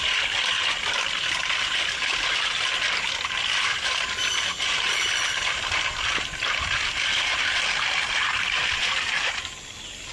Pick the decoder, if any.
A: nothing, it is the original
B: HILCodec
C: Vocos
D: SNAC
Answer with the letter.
A